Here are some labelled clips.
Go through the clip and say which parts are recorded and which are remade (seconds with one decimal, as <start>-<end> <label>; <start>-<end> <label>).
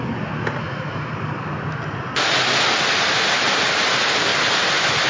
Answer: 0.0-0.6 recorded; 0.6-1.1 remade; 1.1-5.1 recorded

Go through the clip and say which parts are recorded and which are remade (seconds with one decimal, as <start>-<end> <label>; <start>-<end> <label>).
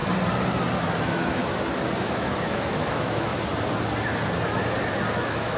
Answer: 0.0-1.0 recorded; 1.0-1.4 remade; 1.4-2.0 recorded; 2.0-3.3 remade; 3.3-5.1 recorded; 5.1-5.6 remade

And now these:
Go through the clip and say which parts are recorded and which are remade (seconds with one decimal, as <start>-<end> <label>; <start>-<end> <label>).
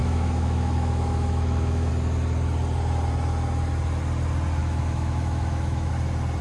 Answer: 0.0-1.9 remade; 1.9-4.6 recorded; 4.6-5.9 remade; 5.9-6.4 recorded